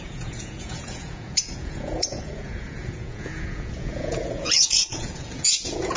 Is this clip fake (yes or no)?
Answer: yes